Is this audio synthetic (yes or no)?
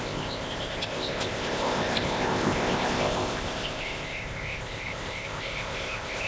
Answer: yes